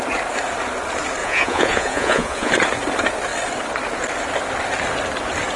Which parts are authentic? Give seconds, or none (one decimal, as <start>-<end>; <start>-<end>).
0.0-1.2; 2.5-5.6